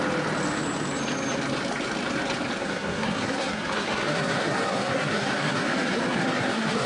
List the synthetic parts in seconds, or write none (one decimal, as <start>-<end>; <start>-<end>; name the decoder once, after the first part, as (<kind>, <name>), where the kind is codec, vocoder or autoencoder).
2.6-6.9 (codec, SNAC)